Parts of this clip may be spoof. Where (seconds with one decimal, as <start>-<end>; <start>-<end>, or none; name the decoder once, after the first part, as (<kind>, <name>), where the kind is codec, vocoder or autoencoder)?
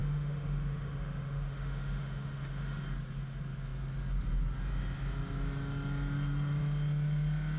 0.0-2.8 (autoencoder, DAC-VAE)